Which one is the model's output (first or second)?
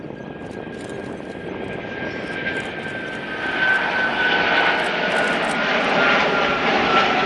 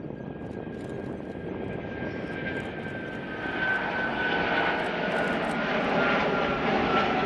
first